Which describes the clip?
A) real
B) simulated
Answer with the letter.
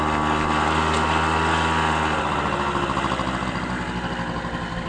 A